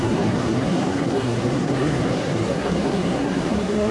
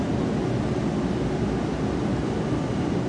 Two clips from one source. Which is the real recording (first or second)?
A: second